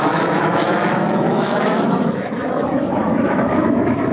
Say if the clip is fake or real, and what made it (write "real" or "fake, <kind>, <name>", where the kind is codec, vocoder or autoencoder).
fake, autoencoder, DAC-VAE